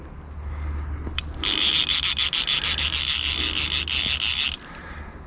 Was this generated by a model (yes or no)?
no